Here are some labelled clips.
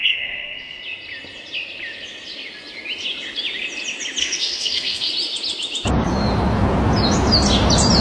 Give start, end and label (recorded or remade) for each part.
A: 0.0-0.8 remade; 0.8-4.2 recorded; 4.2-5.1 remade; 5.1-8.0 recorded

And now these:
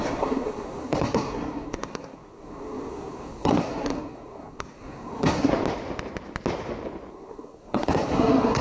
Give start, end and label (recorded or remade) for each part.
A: 0.0-5.5 remade; 5.5-7.1 recorded; 7.1-8.6 remade

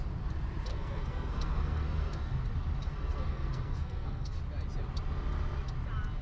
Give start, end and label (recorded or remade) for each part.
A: 0.0-0.7 recorded; 0.7-2.4 remade; 2.4-2.8 recorded; 2.8-4.4 remade; 4.4-6.2 recorded

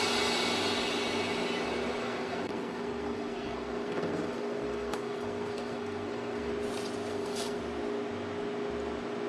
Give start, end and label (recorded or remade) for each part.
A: 0.0-2.0 recorded; 2.0-6.5 remade; 6.5-7.1 recorded; 7.1-7.6 remade; 7.6-9.3 recorded

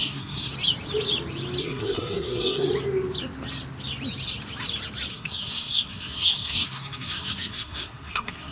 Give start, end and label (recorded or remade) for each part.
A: 0.0-0.5 remade; 0.5-1.6 recorded; 1.6-2.7 remade; 2.7-5.1 recorded; 5.1-8.5 remade

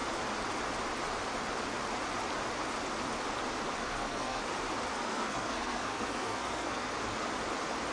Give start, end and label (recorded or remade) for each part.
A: 0.0-3.8 recorded; 3.8-4.4 remade; 4.4-4.9 recorded; 4.9-6.9 remade; 6.9-7.9 recorded

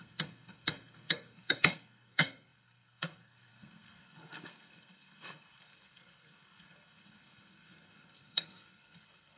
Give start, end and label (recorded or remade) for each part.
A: 0.0-9.4 remade